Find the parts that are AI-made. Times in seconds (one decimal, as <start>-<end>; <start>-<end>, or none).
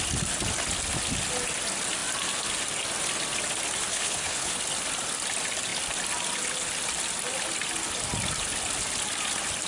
3.9-4.6